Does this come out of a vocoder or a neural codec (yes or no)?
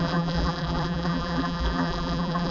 yes